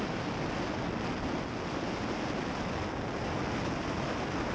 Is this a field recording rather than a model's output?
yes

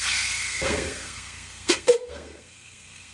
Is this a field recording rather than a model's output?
no